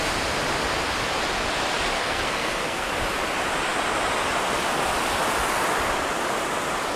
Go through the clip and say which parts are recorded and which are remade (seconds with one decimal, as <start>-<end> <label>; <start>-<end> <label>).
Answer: 0.0-2.0 recorded; 2.0-2.9 remade; 2.9-7.0 recorded